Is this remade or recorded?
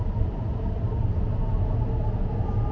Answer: recorded